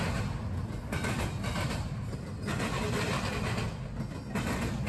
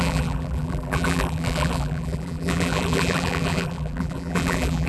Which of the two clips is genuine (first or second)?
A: first